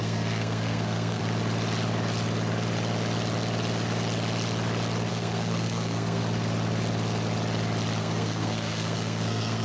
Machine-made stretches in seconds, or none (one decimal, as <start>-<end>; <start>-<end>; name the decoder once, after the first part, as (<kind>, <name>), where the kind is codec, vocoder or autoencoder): 0.0-1.2 (codec, SNAC); 5.1-6.2; 8.0-9.6